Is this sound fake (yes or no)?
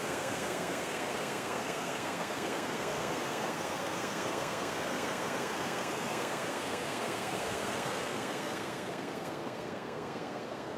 yes